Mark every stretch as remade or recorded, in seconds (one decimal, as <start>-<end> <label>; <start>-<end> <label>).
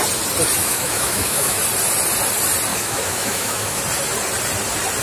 0.0-0.6 recorded; 0.6-1.6 remade; 1.6-2.7 recorded; 2.7-3.8 remade; 3.8-5.0 recorded